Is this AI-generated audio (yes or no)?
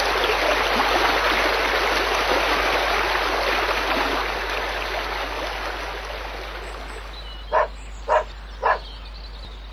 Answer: no